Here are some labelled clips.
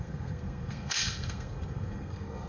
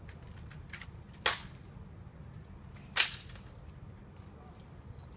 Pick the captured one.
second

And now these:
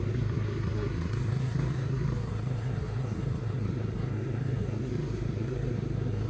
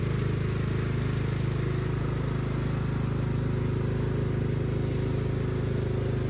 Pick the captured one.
second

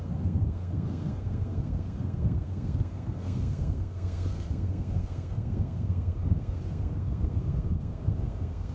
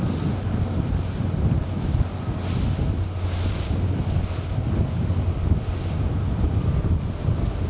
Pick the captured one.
second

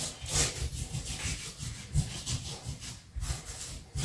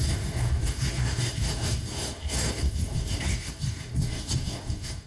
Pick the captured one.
first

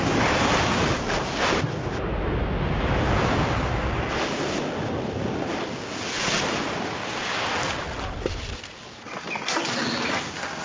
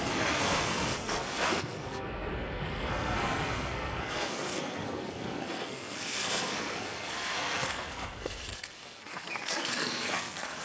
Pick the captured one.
first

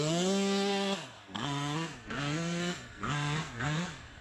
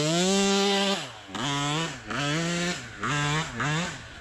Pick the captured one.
second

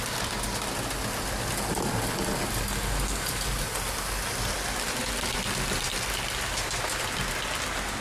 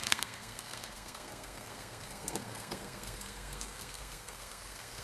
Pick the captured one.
first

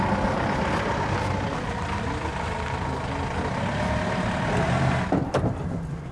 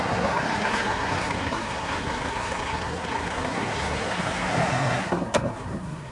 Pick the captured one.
first